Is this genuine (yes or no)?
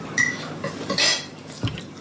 no